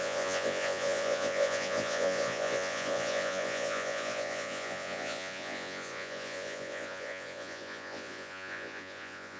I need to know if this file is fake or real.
fake